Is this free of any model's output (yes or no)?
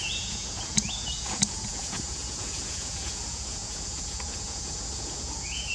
no